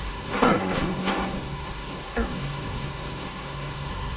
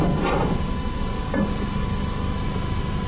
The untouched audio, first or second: second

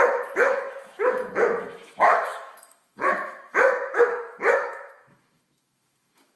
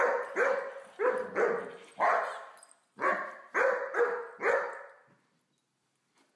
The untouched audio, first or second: second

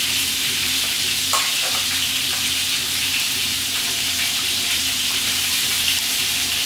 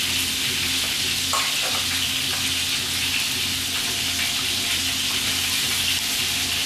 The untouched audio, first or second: second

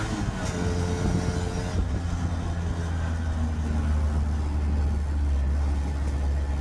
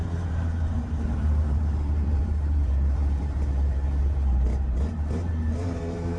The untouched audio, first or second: first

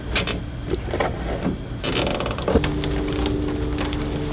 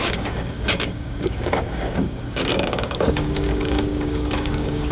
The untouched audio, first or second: first